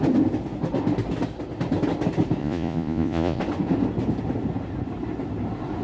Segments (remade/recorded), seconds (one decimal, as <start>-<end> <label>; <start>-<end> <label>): 0.0-2.4 recorded; 2.4-3.4 remade; 3.4-5.8 recorded